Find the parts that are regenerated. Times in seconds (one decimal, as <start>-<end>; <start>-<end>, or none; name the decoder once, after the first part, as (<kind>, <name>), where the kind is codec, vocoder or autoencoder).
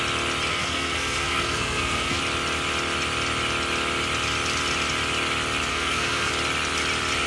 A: 0.5-2.2 (codec, SNAC); 5.7-6.3